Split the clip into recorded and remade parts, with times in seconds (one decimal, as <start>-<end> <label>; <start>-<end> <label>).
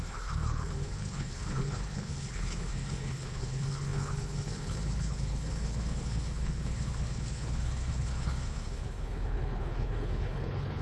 0.0-10.8 remade